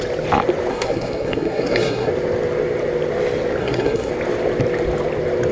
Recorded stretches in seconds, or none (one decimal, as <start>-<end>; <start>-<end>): 0.0-0.7; 2.1-3.6; 4.1-5.5